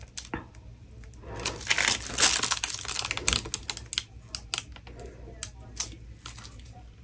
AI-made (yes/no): no